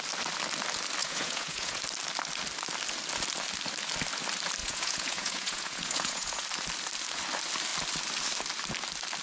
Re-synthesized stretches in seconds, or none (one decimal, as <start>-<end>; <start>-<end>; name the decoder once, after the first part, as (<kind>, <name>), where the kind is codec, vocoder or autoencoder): 1.0-1.8 (vocoder, Vocos); 4.6-6.4